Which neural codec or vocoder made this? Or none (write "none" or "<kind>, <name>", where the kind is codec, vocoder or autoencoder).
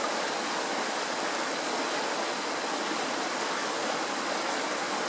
none